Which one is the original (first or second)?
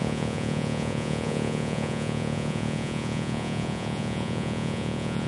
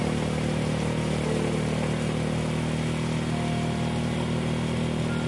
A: second